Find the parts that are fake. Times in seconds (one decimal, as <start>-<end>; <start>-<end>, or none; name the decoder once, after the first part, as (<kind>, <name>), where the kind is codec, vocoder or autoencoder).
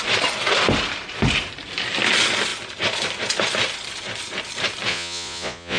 4.9-5.8 (vocoder, Vocos)